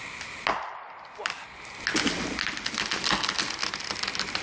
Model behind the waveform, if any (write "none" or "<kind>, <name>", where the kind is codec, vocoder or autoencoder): none